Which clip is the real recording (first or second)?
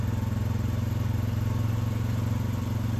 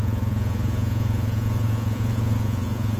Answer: first